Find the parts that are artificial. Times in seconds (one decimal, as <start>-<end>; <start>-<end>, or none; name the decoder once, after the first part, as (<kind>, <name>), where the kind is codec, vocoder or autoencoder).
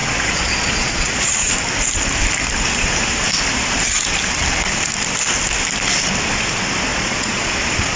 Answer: 0.0-1.5 (vocoder, Vocos); 6.9-8.0